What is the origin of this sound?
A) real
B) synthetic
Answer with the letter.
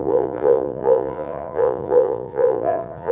B